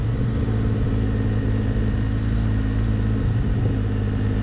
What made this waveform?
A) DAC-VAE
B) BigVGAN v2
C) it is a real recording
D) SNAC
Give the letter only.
C